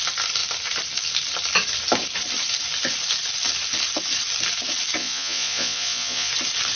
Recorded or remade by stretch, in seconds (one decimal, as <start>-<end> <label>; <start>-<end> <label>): 0.0-5.0 recorded; 5.0-6.3 remade; 6.3-6.8 recorded